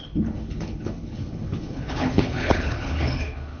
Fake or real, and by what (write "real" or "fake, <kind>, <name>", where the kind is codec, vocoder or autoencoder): fake, codec, HILCodec